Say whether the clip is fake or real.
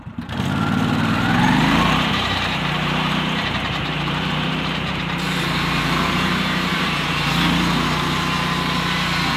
fake